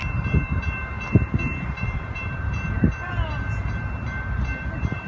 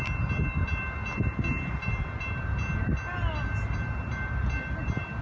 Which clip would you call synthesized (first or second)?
first